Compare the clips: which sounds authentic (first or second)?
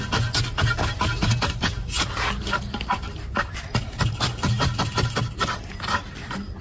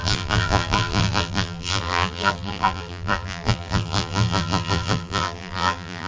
first